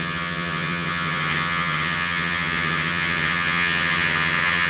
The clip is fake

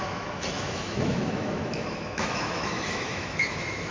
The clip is fake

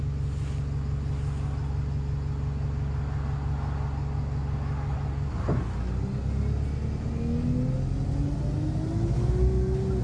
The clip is real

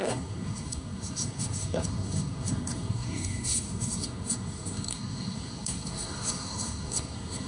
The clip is fake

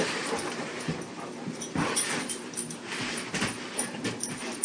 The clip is fake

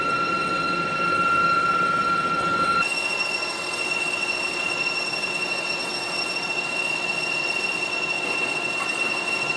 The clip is fake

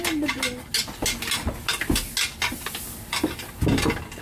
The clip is real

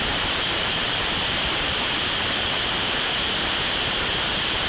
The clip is fake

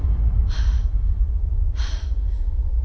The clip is real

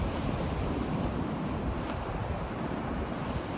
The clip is fake